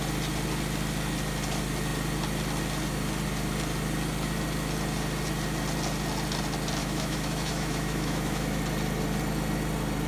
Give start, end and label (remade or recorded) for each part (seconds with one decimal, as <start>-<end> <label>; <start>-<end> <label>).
0.0-6.8 recorded; 6.8-8.6 remade; 8.6-10.1 recorded